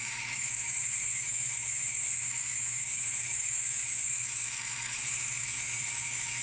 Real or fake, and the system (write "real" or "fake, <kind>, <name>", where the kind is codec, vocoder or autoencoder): fake, autoencoder, DAC-VAE